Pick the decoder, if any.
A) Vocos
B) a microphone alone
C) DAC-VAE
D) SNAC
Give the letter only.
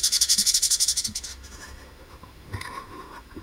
C